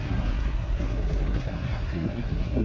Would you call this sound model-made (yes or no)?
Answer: yes